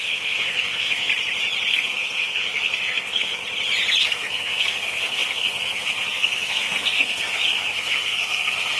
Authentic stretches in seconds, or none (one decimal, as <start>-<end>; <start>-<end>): 1.1-1.7; 3.4-4.0